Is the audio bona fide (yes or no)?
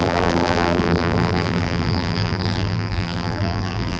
no